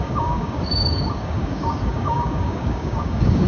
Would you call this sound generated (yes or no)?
yes